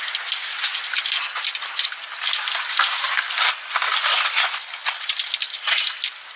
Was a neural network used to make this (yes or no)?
no